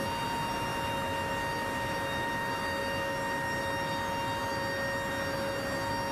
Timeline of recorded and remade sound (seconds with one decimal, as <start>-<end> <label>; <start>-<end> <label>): 0.0-6.1 recorded